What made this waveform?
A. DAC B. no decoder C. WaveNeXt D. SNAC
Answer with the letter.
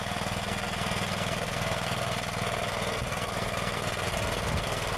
D